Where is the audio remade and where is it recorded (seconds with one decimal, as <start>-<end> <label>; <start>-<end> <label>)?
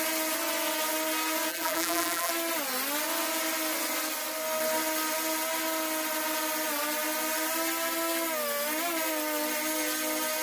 0.0-1.5 recorded; 1.5-2.3 remade; 2.3-10.4 recorded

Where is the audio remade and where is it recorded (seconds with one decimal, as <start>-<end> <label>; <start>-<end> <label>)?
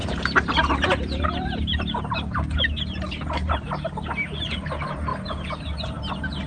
0.0-2.0 remade; 2.0-6.5 recorded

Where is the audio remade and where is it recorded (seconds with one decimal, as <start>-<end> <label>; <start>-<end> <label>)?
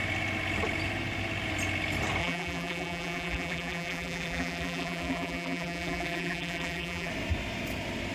0.0-2.2 recorded; 2.2-7.1 remade; 7.1-8.1 recorded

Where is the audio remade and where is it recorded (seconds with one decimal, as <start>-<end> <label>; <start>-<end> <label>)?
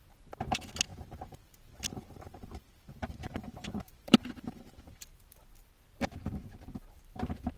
0.0-0.9 recorded; 0.9-5.5 remade; 5.5-6.4 recorded; 6.4-7.6 remade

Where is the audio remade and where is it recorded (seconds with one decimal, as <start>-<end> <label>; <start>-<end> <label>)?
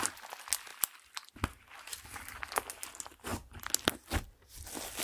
0.0-0.7 recorded; 0.7-1.3 remade; 1.3-5.0 recorded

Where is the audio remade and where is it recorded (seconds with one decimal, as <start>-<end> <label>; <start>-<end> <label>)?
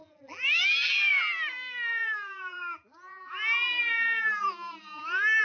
0.0-1.1 remade; 1.1-1.9 recorded; 1.9-5.4 remade